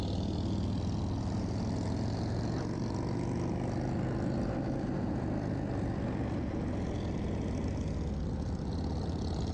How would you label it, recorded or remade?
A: recorded